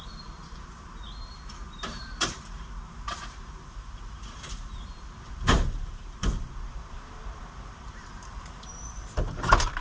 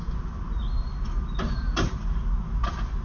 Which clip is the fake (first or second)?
first